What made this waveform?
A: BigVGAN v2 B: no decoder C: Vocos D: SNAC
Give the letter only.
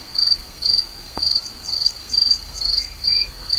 D